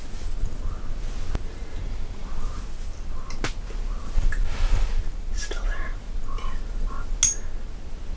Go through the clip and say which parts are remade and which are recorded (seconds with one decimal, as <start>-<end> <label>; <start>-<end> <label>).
0.0-8.2 recorded